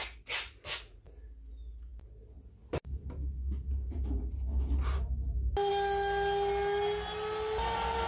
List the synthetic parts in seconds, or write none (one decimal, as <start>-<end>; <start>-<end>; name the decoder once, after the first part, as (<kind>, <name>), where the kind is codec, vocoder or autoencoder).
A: none